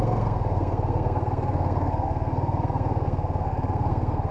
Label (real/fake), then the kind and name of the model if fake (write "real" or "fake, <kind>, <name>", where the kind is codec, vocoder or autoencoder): fake, codec, SNAC